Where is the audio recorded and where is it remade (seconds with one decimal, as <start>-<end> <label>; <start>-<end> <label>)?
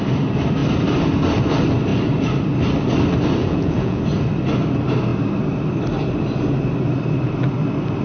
0.0-3.4 recorded; 3.4-4.0 remade; 4.0-8.0 recorded